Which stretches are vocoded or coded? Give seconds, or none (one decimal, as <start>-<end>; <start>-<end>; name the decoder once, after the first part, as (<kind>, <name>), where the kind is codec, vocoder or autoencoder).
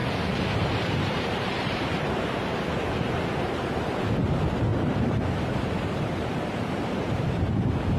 0.0-8.0 (vocoder, BigVGAN v2)